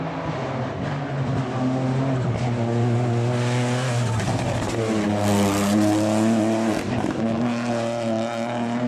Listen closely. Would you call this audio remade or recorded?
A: recorded